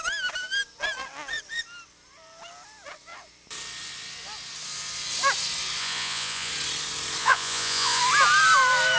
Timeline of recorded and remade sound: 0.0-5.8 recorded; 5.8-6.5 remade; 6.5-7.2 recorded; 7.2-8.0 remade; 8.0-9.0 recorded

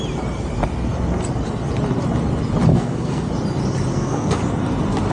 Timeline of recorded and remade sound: 0.0-2.7 recorded; 2.7-3.3 remade; 3.3-3.9 recorded; 3.9-4.4 remade; 4.4-5.1 recorded

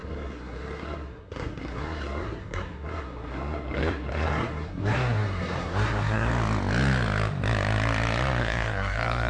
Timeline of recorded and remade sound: 0.0-6.3 remade; 6.3-8.4 recorded; 8.4-9.3 remade

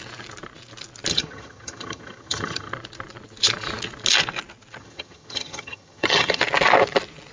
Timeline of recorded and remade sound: 0.0-1.1 recorded; 1.1-2.7 remade; 2.7-4.8 recorded; 4.8-6.4 remade; 6.4-7.3 recorded